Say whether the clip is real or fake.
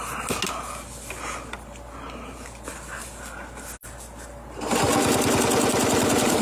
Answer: real